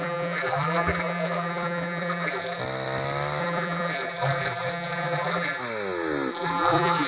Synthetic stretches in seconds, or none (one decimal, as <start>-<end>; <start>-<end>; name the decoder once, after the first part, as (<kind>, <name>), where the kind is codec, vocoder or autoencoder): 0.0-2.6 (vocoder, BigVGAN v2); 3.4-5.6; 6.3-7.1